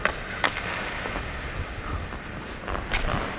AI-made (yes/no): no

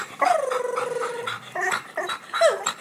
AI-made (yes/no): no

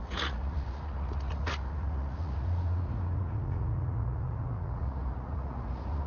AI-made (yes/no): yes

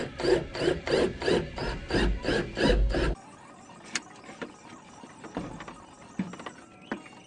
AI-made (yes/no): no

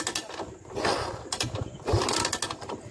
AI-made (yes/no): no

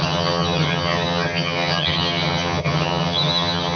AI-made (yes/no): yes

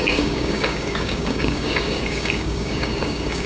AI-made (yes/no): yes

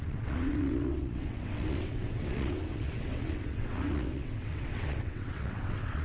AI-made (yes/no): yes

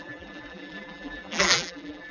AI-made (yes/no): yes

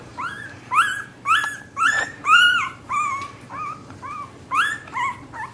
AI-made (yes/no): yes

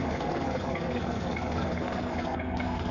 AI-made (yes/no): yes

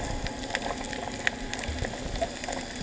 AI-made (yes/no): no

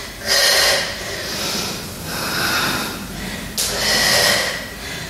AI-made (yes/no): no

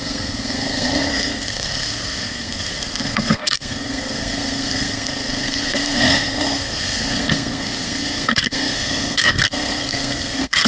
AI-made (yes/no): yes